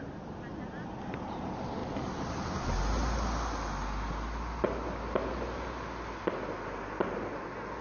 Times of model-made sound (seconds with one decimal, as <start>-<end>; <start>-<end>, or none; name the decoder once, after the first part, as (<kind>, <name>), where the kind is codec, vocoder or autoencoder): 0.5-1.3 (vocoder, BigVGAN v2); 1.8-2.3